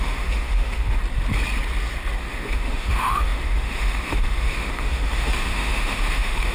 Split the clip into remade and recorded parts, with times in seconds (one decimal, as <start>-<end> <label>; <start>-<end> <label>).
0.0-1.0 remade; 1.0-2.2 recorded; 2.2-6.5 remade